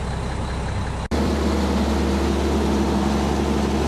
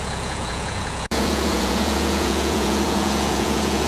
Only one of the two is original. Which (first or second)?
first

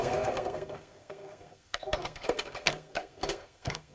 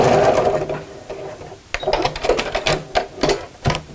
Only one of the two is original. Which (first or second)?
second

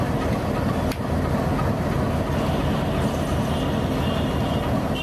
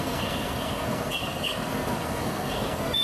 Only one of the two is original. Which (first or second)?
first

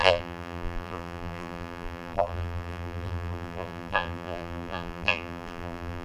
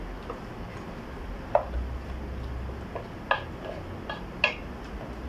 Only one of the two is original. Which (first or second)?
second